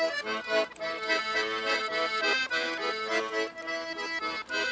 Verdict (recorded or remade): remade